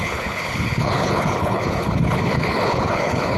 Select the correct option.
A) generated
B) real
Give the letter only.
A